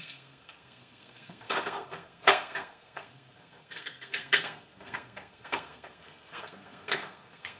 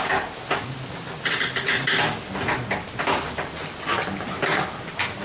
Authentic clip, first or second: second